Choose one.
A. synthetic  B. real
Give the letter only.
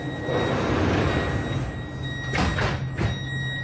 B